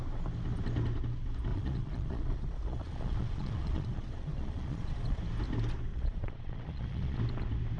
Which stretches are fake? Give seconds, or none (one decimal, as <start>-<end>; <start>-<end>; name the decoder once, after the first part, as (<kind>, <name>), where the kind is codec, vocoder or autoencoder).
1.5-5.2 (vocoder, Vocos); 5.9-7.2